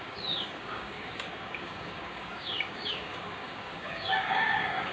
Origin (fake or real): fake